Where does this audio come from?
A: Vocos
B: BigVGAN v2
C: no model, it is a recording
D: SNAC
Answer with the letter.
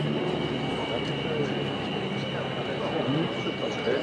C